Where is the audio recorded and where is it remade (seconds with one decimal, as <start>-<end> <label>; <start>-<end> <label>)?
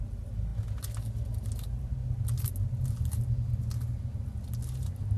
0.0-5.2 recorded